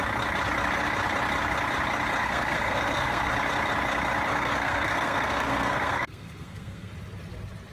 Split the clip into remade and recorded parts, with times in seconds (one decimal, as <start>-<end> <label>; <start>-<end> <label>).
0.0-2.2 recorded; 2.2-3.3 remade; 3.3-4.3 recorded; 4.3-6.9 remade; 6.9-7.7 recorded